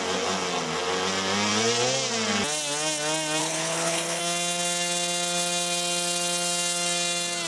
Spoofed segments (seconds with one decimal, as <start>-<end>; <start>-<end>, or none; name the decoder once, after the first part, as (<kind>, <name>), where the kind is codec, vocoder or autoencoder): 3.4-4.2 (codec, HILCodec)